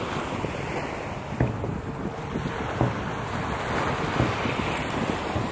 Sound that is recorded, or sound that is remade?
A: recorded